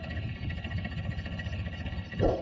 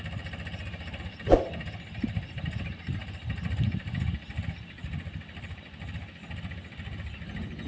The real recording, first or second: second